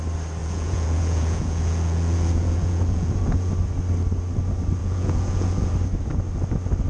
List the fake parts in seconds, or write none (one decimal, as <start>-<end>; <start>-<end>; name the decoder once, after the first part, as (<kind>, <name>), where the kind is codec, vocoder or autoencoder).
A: 0.4-3.5 (vocoder, Vocos); 4.8-5.7